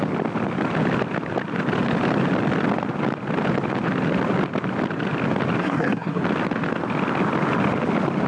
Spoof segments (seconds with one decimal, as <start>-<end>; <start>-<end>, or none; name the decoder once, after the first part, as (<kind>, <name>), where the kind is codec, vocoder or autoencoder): 5.6-6.2 (codec, SNAC)